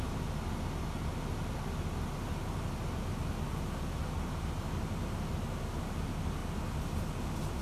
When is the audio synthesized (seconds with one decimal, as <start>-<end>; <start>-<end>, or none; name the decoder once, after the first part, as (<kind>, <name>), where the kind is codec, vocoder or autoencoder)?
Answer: none